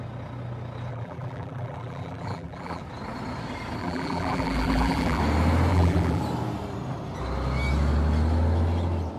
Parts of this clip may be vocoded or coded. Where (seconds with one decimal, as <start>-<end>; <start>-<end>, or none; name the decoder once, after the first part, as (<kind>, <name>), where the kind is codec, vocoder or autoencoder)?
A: 0.9-2.8 (vocoder, BigVGAN v2); 3.8-5.2; 5.7-6.2